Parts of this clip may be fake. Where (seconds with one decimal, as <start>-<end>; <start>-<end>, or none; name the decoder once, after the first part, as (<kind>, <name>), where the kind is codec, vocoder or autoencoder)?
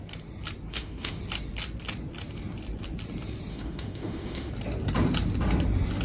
0.7-1.2 (autoencoder, DAC-VAE); 3.5-4.5